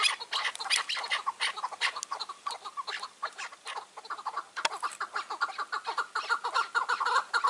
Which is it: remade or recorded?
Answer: recorded